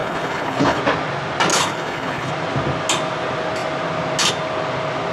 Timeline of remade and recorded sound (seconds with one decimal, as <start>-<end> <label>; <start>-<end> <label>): 0.0-0.8 remade; 0.8-1.5 recorded; 1.5-2.3 remade; 2.3-5.1 recorded